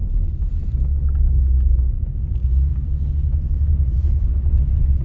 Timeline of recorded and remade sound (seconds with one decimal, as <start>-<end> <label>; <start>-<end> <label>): 0.0-2.7 recorded; 2.7-4.3 remade; 4.3-5.0 recorded